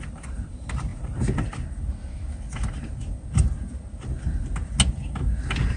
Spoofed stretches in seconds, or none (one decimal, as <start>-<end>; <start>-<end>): none